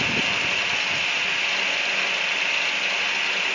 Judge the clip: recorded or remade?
recorded